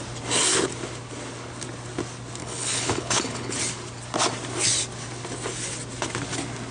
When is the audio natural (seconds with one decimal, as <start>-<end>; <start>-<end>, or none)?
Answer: 0.0-2.4; 3.5-6.7